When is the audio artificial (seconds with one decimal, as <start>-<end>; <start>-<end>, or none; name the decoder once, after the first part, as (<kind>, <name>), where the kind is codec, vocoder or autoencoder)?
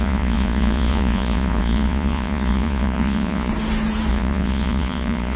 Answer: 0.0-3.5 (vocoder, Vocos); 4.1-5.4